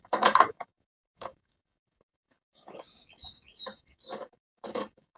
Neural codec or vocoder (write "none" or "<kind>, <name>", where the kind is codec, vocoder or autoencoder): codec, DAC